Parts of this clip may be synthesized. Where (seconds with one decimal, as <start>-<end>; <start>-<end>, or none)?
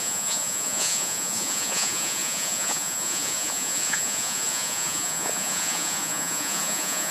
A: 0.0-7.1